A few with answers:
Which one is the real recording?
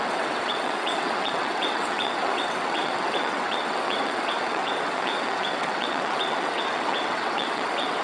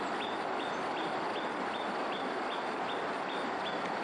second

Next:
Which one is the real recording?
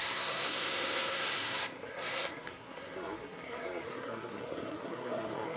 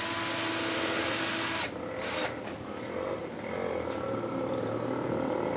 second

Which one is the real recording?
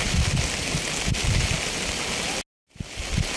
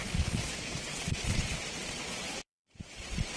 first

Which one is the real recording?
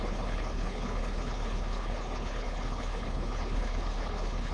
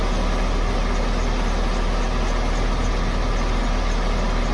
second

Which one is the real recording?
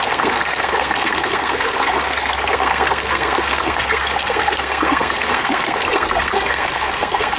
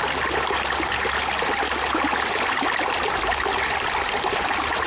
second